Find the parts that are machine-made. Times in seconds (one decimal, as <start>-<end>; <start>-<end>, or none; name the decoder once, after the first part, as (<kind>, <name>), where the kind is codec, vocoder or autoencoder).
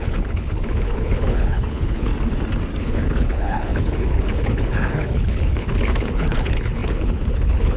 0.0-2.1 (codec, HILCodec); 2.8-7.8